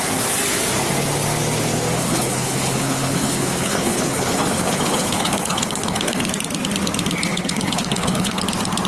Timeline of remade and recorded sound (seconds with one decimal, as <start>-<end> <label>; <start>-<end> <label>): 0.0-2.0 recorded; 2.0-6.3 remade; 6.3-7.3 recorded; 7.3-8.4 remade; 8.4-8.9 recorded